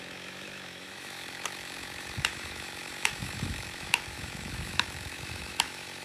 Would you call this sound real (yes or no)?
no